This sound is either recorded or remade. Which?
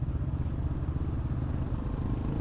recorded